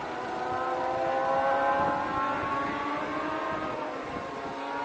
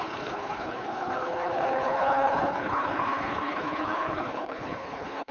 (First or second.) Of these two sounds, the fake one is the second